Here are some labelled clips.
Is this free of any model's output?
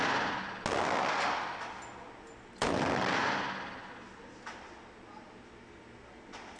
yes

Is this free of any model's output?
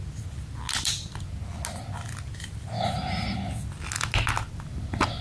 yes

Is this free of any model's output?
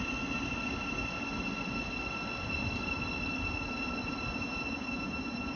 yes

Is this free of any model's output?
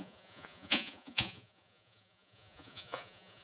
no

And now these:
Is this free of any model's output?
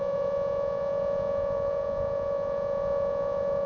no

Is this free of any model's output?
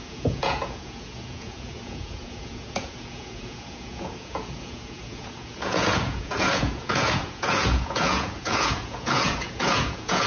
no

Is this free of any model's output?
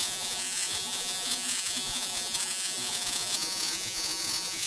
no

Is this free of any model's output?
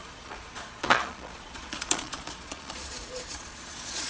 no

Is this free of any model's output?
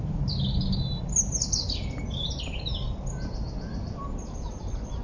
yes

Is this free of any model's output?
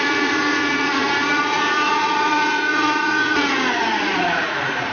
no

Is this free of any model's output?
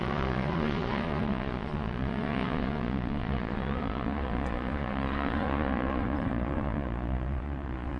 no